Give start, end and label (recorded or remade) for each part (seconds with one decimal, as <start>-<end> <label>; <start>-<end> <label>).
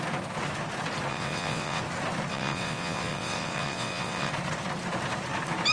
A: 0.0-1.1 recorded; 1.1-1.8 remade; 1.8-2.3 recorded; 2.3-4.3 remade; 4.3-5.7 recorded